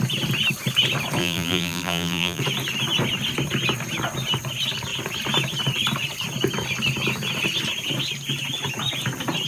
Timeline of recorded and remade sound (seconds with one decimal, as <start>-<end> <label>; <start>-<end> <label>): 0.0-1.2 recorded; 1.2-2.4 remade; 2.4-9.5 recorded